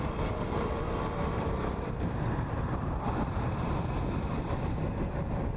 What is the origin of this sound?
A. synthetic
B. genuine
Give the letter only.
B